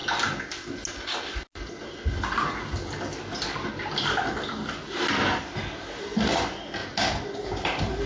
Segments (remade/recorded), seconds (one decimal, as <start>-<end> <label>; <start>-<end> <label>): 0.0-8.1 recorded